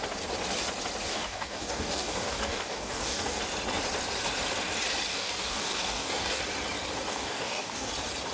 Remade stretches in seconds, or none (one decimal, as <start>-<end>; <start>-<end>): 1.1-3.4; 5.1-6.4; 7.1-7.9

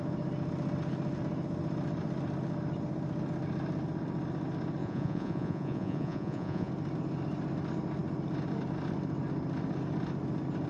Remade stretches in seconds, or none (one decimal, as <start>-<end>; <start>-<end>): 4.8-6.7

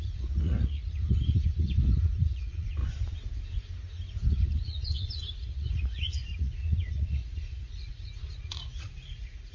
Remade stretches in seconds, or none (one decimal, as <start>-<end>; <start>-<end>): 0.0-2.8; 4.3-9.5

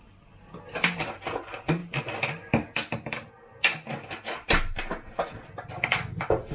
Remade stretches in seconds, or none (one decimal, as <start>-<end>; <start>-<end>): none

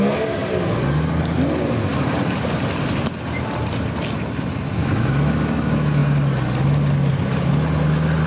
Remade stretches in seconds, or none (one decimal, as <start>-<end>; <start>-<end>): 4.8-5.4

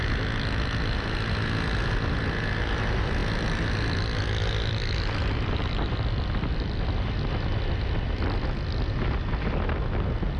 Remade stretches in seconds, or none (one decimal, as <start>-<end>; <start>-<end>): none

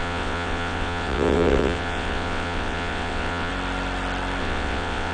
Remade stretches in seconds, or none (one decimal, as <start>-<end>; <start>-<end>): 0.0-3.5; 4.4-5.1